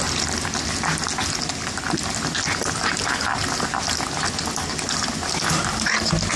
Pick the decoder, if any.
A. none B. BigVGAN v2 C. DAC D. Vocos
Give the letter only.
A